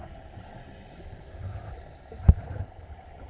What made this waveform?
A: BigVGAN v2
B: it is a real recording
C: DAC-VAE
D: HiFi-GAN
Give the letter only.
B